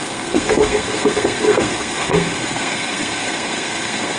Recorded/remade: remade